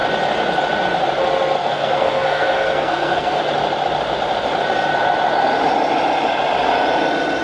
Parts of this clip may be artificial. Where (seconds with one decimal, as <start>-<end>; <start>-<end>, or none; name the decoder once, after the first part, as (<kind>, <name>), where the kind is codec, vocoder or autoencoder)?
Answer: 1.6-3.4 (codec, SNAC)